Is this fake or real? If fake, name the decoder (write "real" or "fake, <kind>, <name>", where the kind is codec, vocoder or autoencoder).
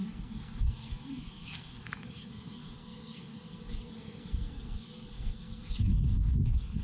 fake, codec, SNAC